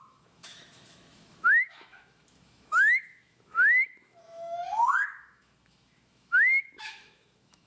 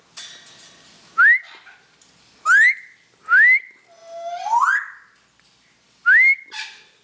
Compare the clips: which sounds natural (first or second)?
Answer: second